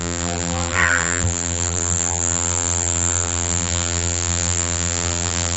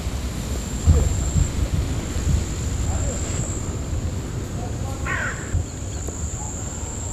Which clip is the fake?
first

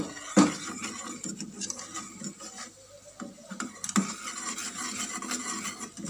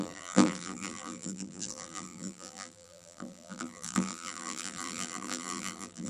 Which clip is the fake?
second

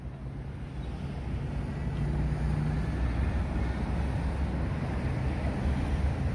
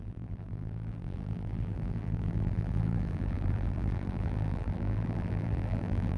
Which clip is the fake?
second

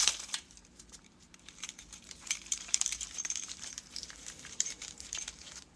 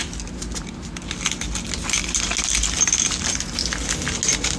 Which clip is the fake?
first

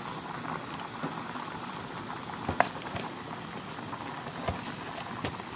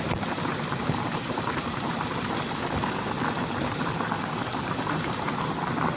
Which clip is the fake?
second